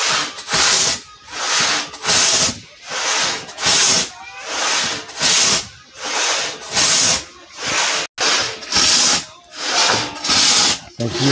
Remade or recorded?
recorded